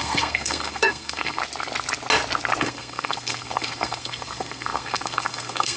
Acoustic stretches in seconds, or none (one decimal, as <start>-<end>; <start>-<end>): 1.4-2.6